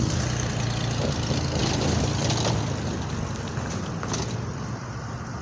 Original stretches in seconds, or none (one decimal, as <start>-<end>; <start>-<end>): 0.0-5.4